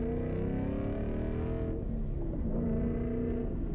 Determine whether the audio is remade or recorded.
recorded